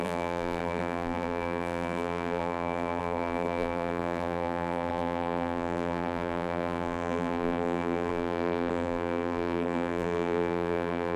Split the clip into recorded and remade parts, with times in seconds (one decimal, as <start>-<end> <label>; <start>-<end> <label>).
0.0-11.2 remade